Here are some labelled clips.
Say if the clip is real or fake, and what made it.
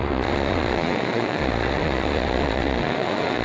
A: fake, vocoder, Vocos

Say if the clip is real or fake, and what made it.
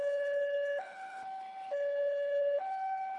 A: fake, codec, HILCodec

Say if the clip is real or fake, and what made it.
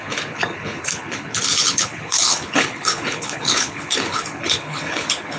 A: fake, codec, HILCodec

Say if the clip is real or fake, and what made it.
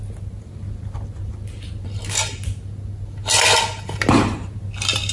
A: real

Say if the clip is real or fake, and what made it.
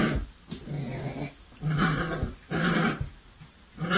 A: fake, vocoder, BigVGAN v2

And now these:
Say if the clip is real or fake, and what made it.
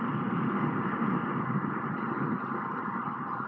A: real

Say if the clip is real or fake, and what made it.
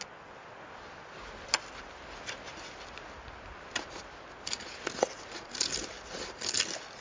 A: real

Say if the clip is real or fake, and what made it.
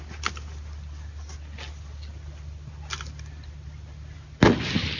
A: real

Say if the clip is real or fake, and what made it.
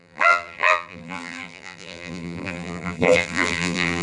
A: fake, vocoder, BigVGAN v2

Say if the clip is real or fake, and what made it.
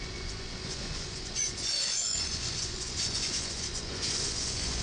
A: fake, vocoder, Vocos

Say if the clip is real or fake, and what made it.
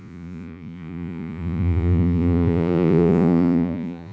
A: fake, vocoder, Vocos